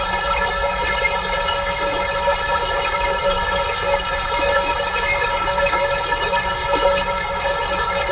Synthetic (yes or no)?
yes